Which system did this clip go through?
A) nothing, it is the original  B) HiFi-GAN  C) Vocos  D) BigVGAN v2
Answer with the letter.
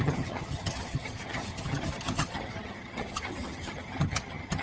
B